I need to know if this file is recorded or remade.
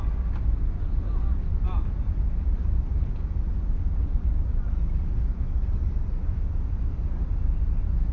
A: recorded